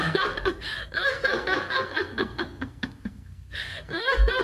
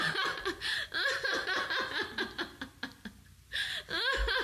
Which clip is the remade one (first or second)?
first